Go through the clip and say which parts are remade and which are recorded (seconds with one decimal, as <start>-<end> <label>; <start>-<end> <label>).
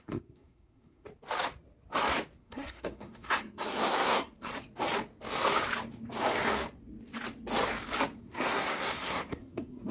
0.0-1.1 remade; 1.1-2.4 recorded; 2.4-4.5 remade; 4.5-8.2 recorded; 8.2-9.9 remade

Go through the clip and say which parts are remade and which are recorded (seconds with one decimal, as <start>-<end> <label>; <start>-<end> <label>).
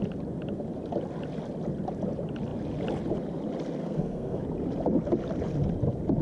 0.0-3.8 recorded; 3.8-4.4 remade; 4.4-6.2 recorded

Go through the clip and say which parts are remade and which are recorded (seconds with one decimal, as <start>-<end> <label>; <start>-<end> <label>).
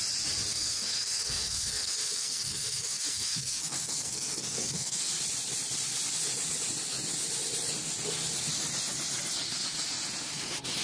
0.0-0.5 recorded; 0.5-5.1 remade; 5.1-10.8 recorded